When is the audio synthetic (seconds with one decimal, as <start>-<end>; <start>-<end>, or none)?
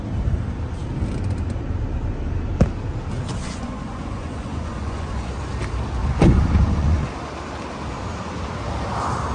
3.4-5.3; 6.0-7.1